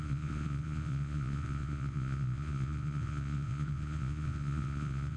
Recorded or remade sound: remade